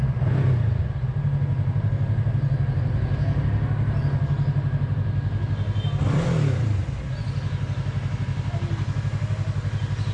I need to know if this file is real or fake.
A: real